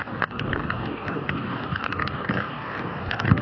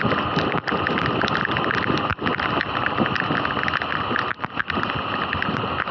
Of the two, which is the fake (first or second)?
first